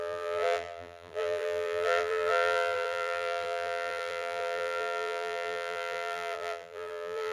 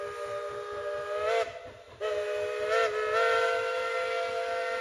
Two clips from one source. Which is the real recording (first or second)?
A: second